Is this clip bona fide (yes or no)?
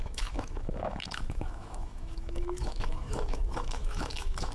no